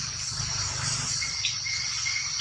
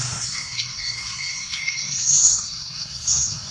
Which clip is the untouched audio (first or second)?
first